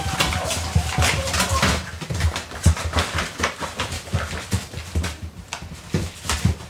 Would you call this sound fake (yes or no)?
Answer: no